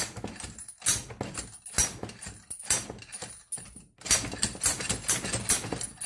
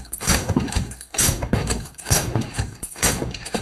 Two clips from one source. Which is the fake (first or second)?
second